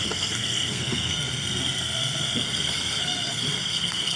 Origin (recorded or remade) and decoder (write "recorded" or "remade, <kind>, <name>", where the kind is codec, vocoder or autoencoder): remade, codec, SNAC